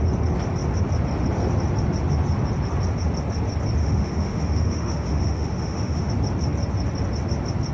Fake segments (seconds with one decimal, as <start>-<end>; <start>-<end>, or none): 3.8-6.1